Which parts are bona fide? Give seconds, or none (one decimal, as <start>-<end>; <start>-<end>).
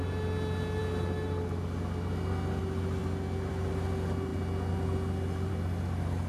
0.0-6.3